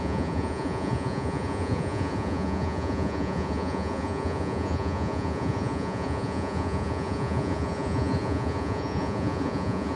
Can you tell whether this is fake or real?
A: fake